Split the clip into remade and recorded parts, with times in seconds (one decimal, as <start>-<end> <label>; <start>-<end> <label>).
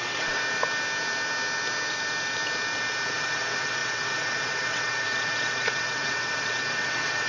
0.0-0.4 remade; 0.4-3.1 recorded; 3.1-7.3 remade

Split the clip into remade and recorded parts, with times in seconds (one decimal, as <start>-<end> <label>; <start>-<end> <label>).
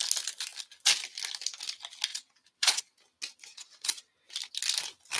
0.0-2.1 recorded; 2.1-2.8 remade; 2.8-3.5 recorded; 3.5-4.1 remade; 4.1-5.2 recorded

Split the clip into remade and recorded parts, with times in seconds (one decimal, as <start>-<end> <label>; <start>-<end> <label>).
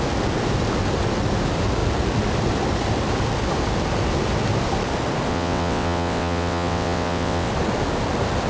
0.0-5.3 recorded; 5.3-7.5 remade; 7.5-8.5 recorded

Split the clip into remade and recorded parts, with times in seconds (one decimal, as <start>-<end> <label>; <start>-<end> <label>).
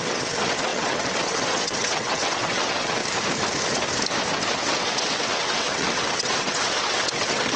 0.0-3.0 remade; 3.0-4.5 recorded; 4.5-7.6 remade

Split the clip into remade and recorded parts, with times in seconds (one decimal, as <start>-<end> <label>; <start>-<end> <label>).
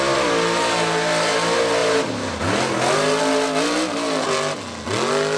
0.0-5.4 recorded